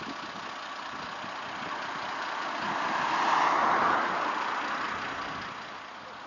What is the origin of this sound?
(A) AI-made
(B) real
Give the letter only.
B